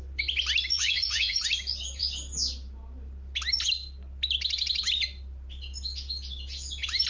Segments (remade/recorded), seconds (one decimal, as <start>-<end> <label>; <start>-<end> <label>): 0.0-0.7 recorded; 0.7-1.4 remade; 1.4-7.1 recorded